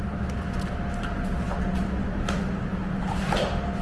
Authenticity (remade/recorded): recorded